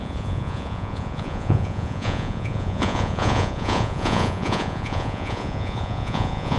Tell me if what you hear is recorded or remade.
remade